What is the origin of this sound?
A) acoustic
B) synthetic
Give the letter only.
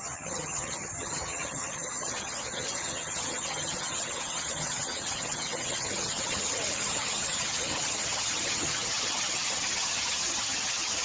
B